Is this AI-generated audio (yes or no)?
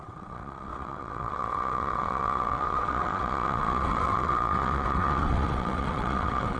yes